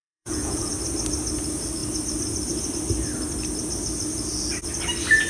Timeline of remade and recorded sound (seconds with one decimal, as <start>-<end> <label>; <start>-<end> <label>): 0.0-0.7 remade; 0.7-5.3 recorded